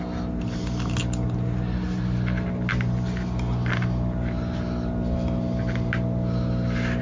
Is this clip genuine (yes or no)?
yes